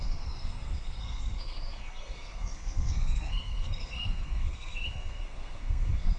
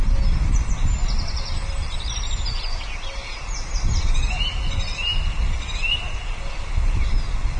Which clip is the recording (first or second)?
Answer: second